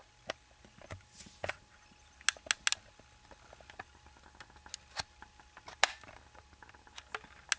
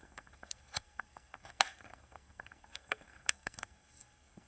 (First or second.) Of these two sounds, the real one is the first